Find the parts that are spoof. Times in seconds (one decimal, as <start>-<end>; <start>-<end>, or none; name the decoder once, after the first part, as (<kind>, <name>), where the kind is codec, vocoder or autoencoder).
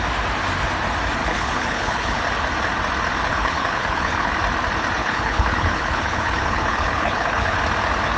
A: 1.2-2.2 (codec, HILCodec); 3.3-4.3; 5.0-7.6